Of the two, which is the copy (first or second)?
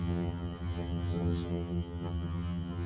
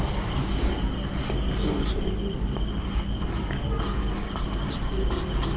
first